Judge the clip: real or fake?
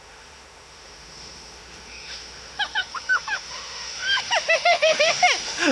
fake